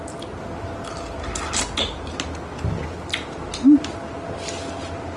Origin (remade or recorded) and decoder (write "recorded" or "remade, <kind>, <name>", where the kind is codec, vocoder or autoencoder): recorded